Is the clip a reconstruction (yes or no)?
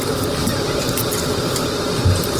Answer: no